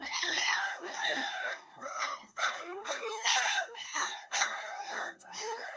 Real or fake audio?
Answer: fake